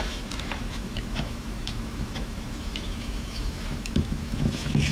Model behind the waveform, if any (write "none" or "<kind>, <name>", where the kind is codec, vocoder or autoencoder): autoencoder, DAC-VAE